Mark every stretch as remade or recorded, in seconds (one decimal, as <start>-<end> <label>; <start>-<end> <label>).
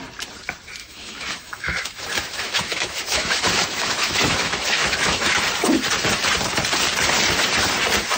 0.0-0.8 recorded; 0.8-5.4 remade; 5.4-8.2 recorded